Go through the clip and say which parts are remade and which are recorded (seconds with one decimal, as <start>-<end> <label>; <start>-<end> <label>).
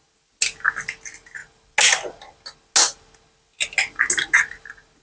0.0-5.0 recorded